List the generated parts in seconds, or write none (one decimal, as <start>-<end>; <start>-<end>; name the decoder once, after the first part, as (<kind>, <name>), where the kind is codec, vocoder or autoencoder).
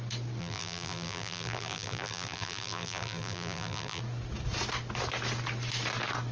0.4-4.0 (vocoder, BigVGAN v2)